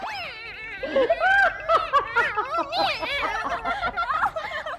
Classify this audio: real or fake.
real